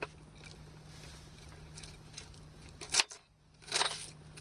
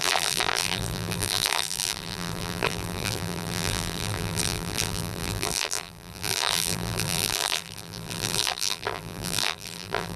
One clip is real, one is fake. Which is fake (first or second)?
second